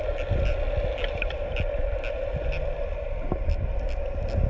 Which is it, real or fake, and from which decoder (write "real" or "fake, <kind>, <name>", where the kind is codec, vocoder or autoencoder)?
real